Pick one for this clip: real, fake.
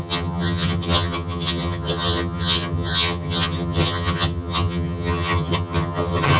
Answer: fake